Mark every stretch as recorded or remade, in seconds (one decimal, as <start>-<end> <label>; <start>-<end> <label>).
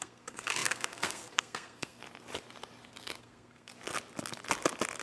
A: 0.0-2.0 remade; 2.0-3.2 recorded; 3.2-3.7 remade; 3.7-5.0 recorded